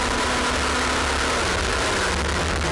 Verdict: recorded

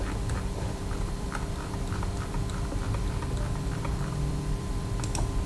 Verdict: remade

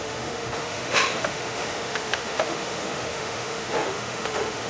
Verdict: remade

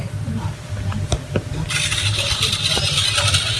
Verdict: recorded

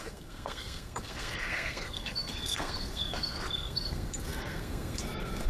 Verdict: remade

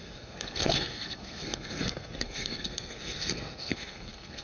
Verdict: remade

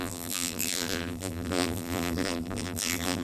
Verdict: remade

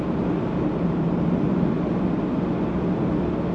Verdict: recorded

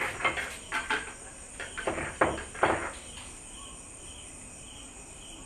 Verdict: recorded